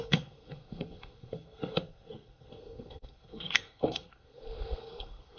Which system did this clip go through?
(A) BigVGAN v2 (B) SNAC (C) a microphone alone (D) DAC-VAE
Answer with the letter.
B